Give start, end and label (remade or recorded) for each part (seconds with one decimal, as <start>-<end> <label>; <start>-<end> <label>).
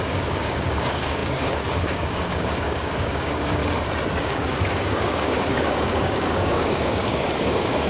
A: 0.0-3.6 remade; 3.6-4.2 recorded; 4.2-7.9 remade